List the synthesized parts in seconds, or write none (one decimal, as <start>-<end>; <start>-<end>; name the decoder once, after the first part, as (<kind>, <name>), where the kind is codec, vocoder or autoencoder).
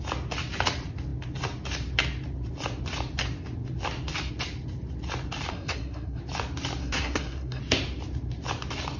5.5-6.2 (codec, SNAC); 6.8-7.6